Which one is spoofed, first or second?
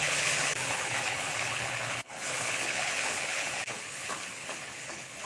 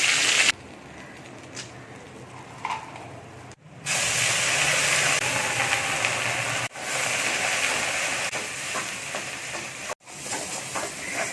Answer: first